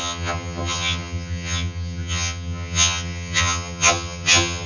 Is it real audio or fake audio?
fake